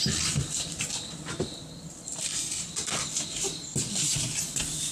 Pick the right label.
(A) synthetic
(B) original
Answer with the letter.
B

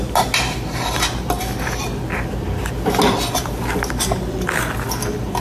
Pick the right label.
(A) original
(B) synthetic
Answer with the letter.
A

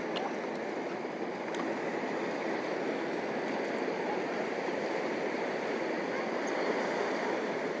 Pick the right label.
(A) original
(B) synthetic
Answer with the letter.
A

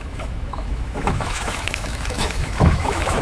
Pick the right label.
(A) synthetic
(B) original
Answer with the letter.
A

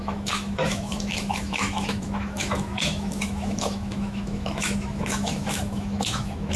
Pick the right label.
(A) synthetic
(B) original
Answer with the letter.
A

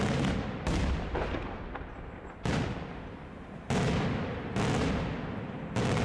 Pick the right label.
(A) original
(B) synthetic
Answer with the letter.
A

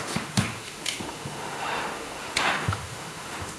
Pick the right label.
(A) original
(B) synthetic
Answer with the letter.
B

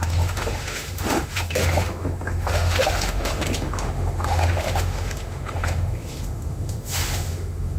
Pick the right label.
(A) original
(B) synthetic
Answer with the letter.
B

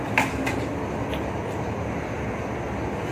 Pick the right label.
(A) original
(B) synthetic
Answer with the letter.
A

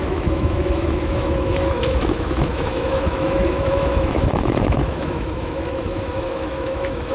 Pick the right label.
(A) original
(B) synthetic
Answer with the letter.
B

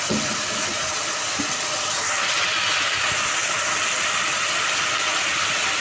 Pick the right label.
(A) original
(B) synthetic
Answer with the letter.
A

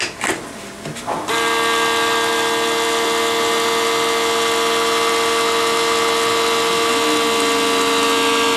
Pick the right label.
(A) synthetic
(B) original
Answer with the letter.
B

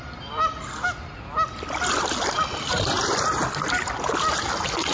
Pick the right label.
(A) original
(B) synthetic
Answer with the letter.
A